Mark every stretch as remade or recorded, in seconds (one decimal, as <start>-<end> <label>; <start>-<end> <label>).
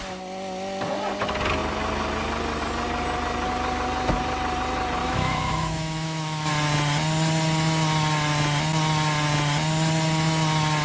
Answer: 0.0-5.0 recorded; 5.0-6.5 remade; 6.5-10.8 recorded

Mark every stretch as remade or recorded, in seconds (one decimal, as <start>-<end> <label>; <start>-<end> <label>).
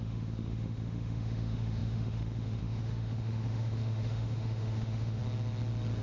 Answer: 0.0-5.2 remade; 5.2-6.0 recorded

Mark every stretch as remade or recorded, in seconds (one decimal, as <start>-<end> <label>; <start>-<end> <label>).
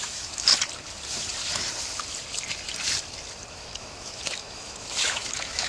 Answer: 0.0-0.5 remade; 0.5-3.5 recorded; 3.5-5.7 remade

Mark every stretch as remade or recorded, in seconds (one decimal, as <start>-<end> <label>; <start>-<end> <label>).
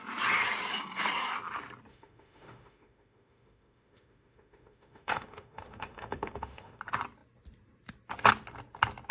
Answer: 0.0-1.9 recorded; 1.9-6.8 remade; 6.8-9.1 recorded